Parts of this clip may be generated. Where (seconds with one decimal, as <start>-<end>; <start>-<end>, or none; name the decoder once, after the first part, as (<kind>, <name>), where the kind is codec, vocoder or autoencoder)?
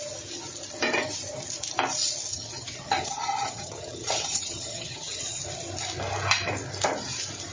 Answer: 2.3-5.4 (vocoder, HiFi-GAN)